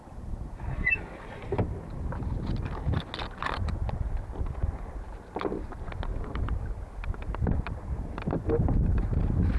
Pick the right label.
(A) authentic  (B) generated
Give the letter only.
A